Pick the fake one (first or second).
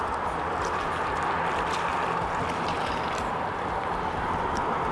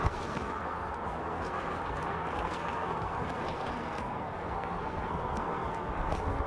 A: second